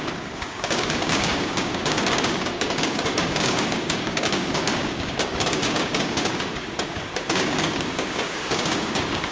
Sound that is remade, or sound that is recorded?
remade